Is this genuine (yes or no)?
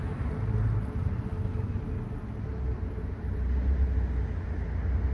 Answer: yes